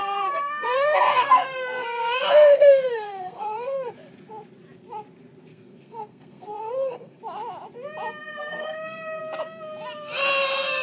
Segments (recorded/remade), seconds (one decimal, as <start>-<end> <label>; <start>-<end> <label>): 0.0-3.9 remade; 3.9-5.5 recorded; 5.5-7.2 remade; 7.2-8.2 recorded; 8.2-9.2 remade; 9.2-10.8 recorded